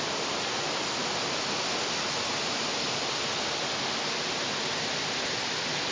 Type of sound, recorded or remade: recorded